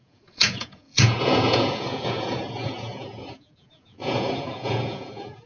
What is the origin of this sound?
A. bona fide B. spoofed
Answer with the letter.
B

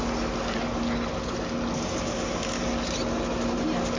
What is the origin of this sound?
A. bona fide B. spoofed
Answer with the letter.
A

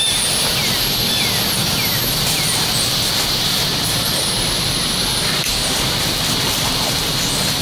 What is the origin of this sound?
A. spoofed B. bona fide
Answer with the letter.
A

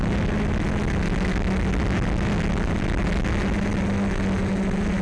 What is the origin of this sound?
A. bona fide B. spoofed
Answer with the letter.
A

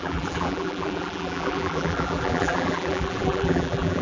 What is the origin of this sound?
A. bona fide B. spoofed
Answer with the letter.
B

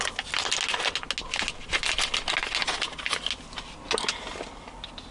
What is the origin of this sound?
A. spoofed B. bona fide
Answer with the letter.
B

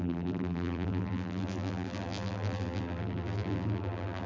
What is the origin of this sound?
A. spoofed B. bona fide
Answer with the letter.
A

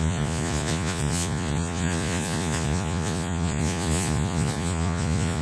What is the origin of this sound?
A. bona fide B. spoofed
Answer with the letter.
B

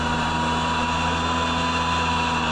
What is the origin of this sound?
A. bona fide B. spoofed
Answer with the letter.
A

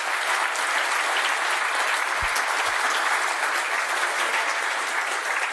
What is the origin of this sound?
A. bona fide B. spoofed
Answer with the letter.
A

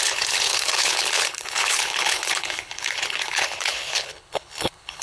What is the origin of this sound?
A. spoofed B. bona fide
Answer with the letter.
A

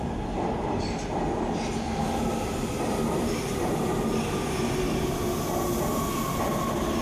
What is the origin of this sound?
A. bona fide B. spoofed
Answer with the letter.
A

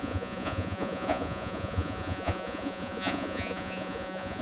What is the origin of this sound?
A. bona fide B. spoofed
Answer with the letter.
B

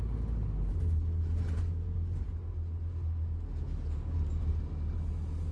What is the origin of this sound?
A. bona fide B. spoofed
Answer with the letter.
A